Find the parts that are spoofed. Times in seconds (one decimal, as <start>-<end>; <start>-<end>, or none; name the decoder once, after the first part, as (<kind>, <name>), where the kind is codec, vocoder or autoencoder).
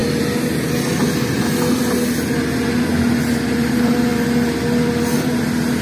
3.5-4.1 (vocoder, BigVGAN v2)